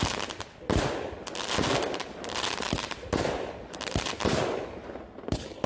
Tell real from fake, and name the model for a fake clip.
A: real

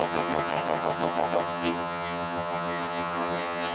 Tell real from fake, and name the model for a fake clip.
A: fake, vocoder, HiFi-GAN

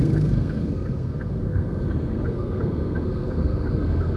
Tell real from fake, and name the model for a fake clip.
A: fake, codec, SNAC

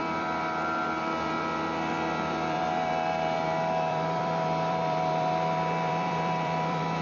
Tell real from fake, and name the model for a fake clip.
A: fake, vocoder, BigVGAN v2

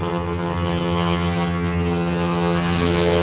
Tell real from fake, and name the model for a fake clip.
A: fake, vocoder, HiFi-GAN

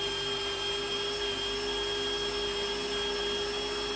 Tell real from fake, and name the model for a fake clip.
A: real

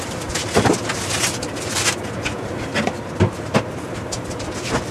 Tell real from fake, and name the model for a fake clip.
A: real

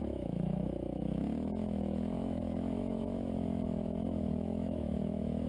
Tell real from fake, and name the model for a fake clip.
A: fake, autoencoder, DAC-VAE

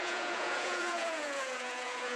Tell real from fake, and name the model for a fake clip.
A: fake, vocoder, Vocos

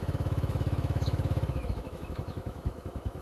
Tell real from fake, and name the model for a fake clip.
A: fake, autoencoder, DAC-VAE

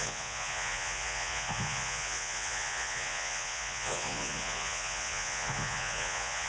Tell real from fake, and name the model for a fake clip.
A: fake, vocoder, Vocos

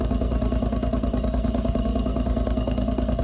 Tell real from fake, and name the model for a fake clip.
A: fake, codec, SNAC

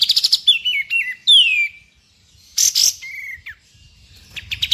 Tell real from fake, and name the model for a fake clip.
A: real